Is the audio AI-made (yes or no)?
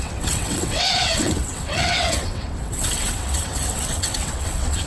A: yes